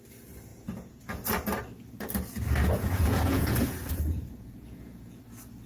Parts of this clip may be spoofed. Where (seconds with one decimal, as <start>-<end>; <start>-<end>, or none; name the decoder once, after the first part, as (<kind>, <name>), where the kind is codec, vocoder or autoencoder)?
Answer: 0.5-1.0 (vocoder, Vocos); 2.6-5.2